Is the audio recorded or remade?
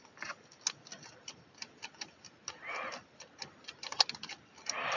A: recorded